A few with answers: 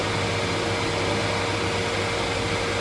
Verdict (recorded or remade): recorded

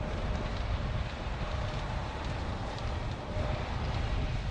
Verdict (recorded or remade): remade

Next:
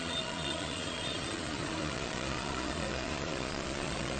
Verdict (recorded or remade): remade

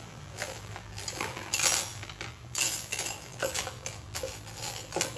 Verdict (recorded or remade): remade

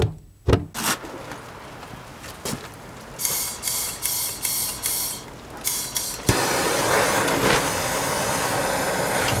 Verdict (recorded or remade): recorded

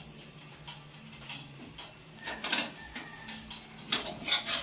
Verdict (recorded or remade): recorded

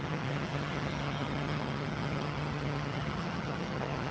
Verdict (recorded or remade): remade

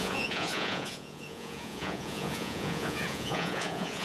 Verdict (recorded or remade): remade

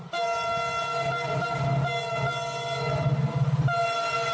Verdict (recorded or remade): recorded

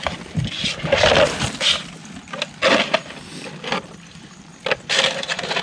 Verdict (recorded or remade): recorded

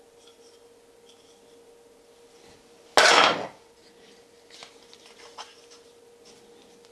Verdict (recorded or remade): recorded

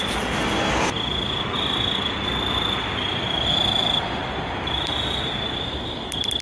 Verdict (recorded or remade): recorded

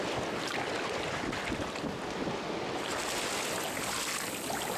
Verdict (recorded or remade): recorded